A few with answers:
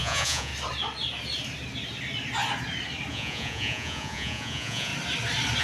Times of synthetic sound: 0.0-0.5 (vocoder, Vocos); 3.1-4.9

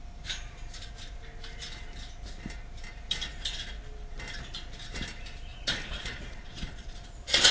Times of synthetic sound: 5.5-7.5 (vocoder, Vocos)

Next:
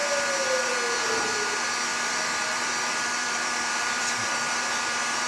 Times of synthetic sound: 1.9-5.3 (vocoder, BigVGAN v2)

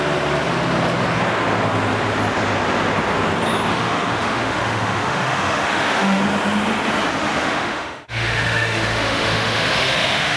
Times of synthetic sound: 3.7-6.2 (autoencoder, DAC-VAE); 7.2-10.4

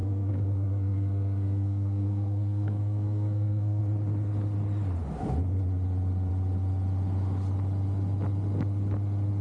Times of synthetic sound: 0.0-3.8 (codec, SNAC)